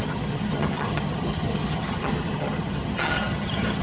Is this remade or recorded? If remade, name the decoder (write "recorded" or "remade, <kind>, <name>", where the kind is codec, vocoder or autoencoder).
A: remade, vocoder, HiFi-GAN